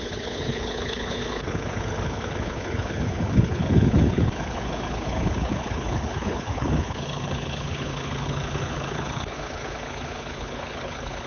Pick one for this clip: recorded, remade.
remade